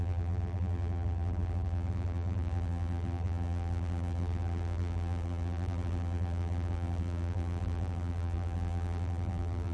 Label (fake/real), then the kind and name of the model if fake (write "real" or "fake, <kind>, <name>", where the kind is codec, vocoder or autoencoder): fake, vocoder, BigVGAN v2